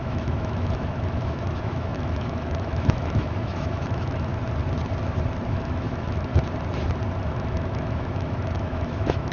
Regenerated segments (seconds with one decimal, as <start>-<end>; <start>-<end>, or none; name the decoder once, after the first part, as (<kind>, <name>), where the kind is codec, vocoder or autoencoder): 0.0-4.3 (autoencoder, DAC-VAE); 5.5-6.3; 7.2-9.3